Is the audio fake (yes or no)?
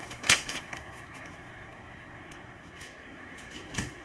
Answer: yes